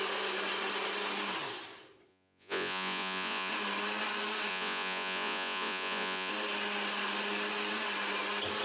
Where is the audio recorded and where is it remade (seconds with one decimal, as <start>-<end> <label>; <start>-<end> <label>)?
0.0-2.1 recorded; 2.1-3.5 remade; 3.5-4.5 recorded; 4.5-6.3 remade; 6.3-8.6 recorded